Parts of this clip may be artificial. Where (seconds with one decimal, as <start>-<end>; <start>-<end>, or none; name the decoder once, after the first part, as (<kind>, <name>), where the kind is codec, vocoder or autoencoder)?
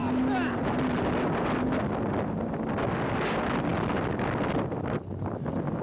none